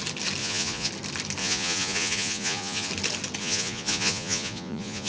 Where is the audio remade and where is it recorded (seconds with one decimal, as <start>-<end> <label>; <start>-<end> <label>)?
0.0-0.4 recorded; 0.4-0.9 remade; 0.9-1.4 recorded; 1.4-2.9 remade; 2.9-3.4 recorded; 3.4-5.1 remade